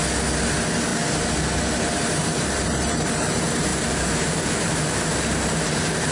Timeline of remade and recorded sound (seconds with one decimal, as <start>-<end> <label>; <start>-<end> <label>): 0.0-2.2 recorded; 2.2-3.1 remade; 3.1-3.7 recorded; 3.7-6.1 remade